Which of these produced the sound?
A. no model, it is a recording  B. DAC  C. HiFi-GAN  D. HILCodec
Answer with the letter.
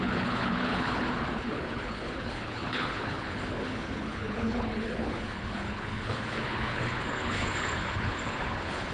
D